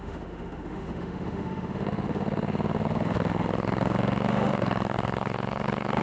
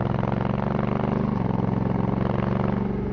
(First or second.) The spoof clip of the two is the first